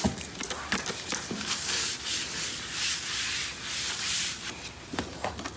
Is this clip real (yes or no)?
yes